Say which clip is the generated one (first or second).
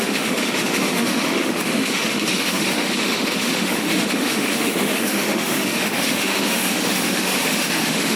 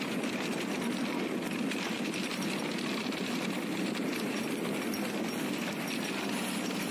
first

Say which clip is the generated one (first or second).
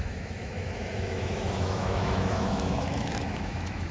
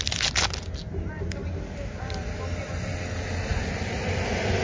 first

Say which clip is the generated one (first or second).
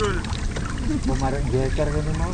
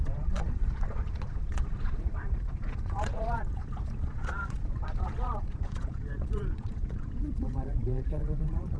second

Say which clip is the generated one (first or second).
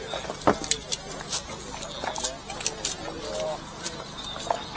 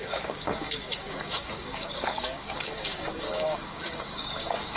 second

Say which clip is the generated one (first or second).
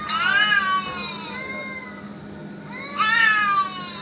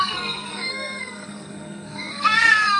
second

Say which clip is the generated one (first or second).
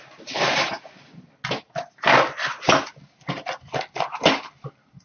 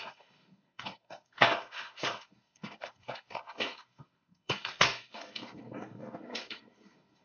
second